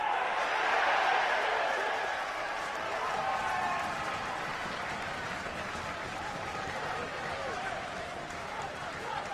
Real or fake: fake